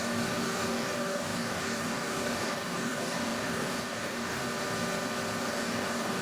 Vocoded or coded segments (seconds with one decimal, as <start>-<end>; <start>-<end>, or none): 0.0-4.4; 5.4-6.2